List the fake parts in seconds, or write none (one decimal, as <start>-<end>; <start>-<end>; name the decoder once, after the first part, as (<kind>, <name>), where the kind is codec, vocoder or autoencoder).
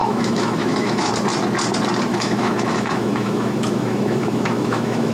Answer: 0.0-1.1 (autoencoder, DAC-VAE); 2.1-5.1